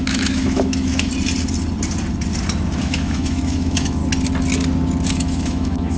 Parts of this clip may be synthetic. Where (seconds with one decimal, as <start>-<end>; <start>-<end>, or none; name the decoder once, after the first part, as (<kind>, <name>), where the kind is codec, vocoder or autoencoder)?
0.0-1.1 (autoencoder, DAC-VAE); 2.8-4.0; 5.1-6.0